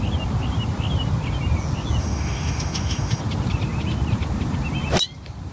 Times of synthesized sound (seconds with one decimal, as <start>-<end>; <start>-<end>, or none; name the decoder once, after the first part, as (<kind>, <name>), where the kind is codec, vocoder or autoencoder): 2.0-3.2 (autoencoder, DAC-VAE)